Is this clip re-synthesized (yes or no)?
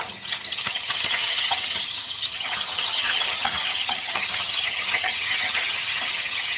yes